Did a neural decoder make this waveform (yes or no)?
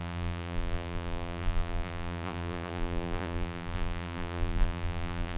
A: yes